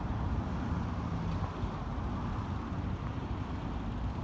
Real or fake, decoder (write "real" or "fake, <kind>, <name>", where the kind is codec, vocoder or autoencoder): real